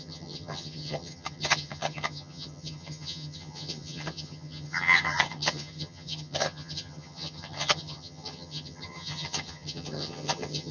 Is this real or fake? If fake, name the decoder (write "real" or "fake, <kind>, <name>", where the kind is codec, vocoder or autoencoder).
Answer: fake, vocoder, HiFi-GAN